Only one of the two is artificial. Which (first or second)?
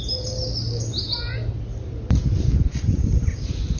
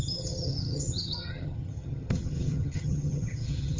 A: second